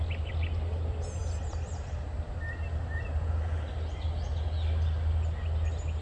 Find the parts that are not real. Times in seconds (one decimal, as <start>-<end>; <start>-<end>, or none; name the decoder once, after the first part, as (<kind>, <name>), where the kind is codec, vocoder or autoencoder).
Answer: none